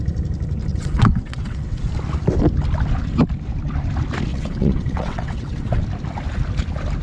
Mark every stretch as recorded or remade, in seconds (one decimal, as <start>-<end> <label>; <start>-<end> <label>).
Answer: 0.0-0.7 recorded; 0.7-1.9 remade; 1.9-4.3 recorded; 4.3-5.8 remade; 5.8-7.0 recorded